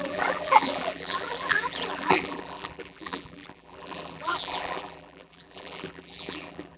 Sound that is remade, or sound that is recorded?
remade